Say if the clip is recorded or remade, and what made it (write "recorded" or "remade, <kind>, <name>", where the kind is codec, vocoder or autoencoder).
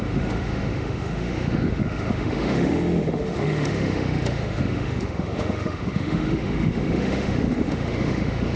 remade, autoencoder, DAC-VAE